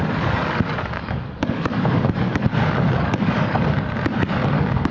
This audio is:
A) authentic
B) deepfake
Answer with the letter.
B